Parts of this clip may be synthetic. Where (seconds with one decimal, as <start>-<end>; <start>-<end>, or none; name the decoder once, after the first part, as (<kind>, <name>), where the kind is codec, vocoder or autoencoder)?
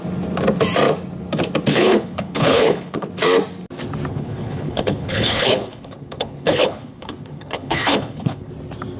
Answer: 1.7-3.1 (codec, HILCodec); 4.1-8.5